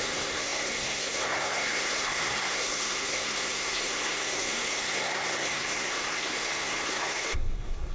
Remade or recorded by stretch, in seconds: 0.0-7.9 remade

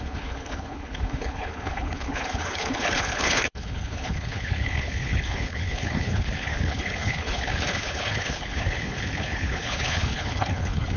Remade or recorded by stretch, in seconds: 0.0-11.0 remade

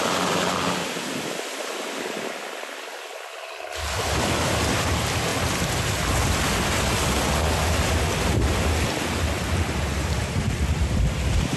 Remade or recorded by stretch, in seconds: 0.0-2.9 recorded; 2.9-4.0 remade; 4.0-5.3 recorded; 5.3-6.1 remade; 6.1-11.6 recorded

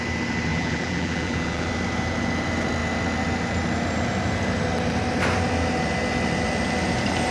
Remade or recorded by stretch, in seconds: 0.0-0.5 recorded; 0.5-1.7 remade; 1.7-7.3 recorded

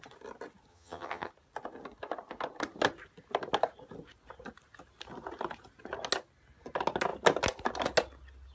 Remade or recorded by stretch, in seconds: 0.0-0.7 recorded; 0.7-1.3 remade; 1.3-8.5 recorded

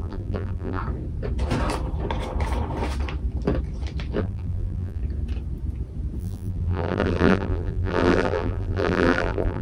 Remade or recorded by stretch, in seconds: 0.0-0.8 remade; 0.8-4.2 recorded; 4.2-5.0 remade; 5.0-6.2 recorded; 6.2-9.6 remade

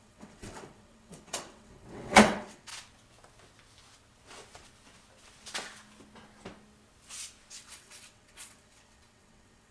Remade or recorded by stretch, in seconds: 0.0-2.7 remade; 2.7-7.5 recorded; 7.5-9.7 remade

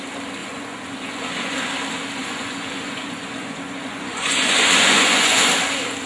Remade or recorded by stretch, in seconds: 0.0-0.4 recorded; 0.4-1.7 remade; 1.7-2.2 recorded; 2.2-5.5 remade; 5.5-6.1 recorded